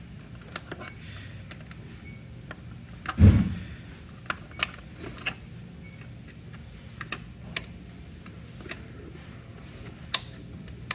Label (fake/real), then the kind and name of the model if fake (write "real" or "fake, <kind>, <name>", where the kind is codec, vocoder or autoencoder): real